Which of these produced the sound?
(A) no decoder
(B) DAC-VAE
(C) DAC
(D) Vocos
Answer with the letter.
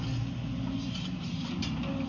A